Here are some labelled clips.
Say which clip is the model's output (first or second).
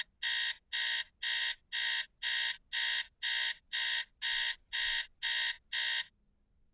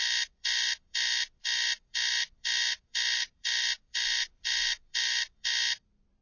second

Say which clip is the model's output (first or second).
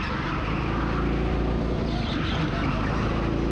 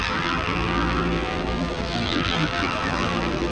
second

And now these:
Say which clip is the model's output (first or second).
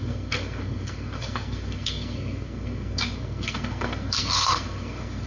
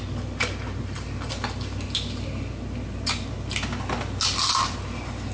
first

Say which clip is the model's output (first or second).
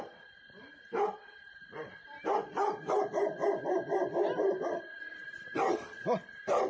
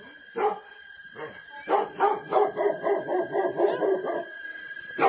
first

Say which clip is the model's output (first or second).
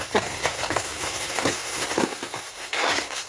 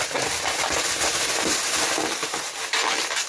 first